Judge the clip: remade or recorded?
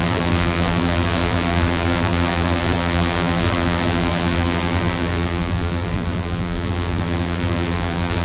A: remade